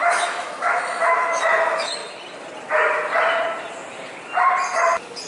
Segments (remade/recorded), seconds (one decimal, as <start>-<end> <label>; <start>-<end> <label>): 0.0-2.0 remade; 2.0-5.3 recorded

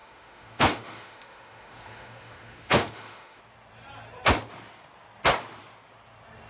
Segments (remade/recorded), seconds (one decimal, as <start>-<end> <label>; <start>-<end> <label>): 0.0-3.4 remade; 3.4-6.5 recorded

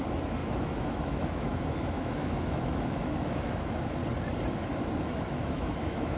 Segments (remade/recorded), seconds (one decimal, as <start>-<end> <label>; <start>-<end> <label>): 0.0-4.0 remade; 4.0-5.2 recorded; 5.2-6.2 remade

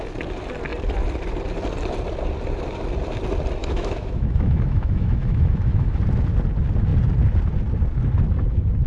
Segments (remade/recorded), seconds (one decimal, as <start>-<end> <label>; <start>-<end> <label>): 0.0-3.6 recorded; 3.6-6.0 remade; 6.0-8.9 recorded

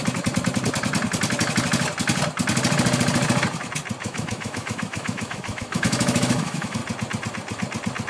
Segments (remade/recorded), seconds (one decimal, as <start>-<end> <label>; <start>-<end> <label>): 0.0-4.0 recorded; 4.0-6.8 remade; 6.8-8.1 recorded